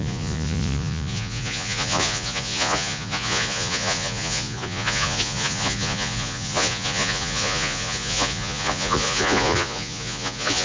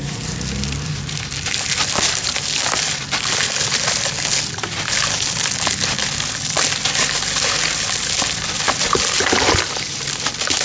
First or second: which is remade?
first